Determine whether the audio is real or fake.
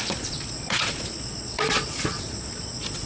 fake